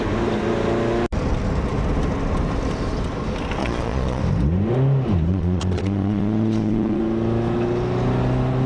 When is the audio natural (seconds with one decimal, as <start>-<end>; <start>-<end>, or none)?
0.0-3.6; 4.2-5.3; 7.0-8.7